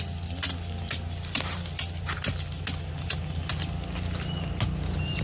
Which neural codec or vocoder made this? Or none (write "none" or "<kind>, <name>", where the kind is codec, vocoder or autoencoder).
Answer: none